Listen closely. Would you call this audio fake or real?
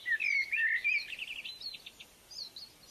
real